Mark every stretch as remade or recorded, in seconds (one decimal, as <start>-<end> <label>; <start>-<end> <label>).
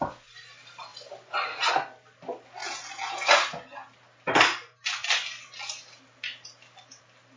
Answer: 0.0-7.4 recorded